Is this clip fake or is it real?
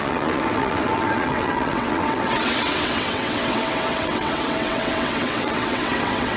fake